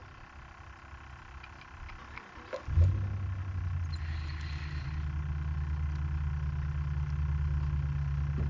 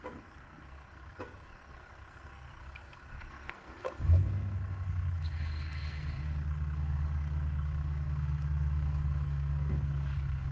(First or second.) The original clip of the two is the first